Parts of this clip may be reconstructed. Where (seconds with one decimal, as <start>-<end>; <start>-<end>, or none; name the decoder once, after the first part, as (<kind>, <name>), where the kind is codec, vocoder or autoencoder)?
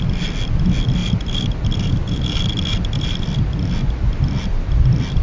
none